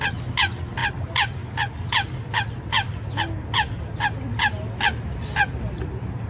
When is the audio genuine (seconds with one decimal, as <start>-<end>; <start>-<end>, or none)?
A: 0.0-6.3